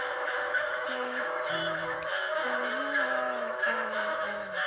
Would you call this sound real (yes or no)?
no